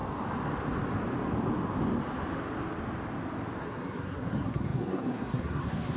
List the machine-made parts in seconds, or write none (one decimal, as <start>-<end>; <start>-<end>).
3.6-6.0